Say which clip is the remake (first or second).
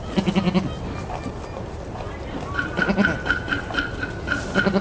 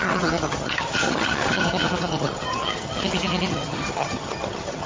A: second